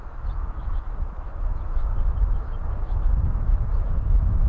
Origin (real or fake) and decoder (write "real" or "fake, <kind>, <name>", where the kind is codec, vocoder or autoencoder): fake, autoencoder, DAC-VAE